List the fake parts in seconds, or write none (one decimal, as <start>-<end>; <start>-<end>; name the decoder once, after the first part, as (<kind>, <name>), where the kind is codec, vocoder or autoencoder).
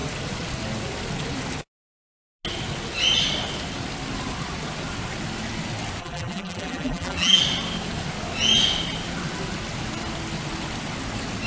6.0-7.4 (vocoder, BigVGAN v2)